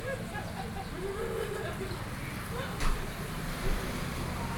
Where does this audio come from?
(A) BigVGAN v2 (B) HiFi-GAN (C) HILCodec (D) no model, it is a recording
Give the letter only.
A